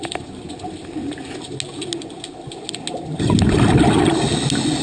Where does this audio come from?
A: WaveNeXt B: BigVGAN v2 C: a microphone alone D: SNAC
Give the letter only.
C